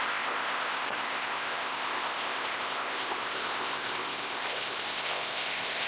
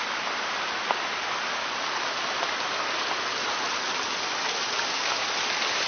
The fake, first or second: first